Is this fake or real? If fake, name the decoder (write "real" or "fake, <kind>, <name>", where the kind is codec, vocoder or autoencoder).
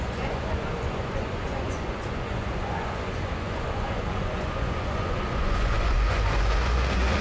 fake, vocoder, Vocos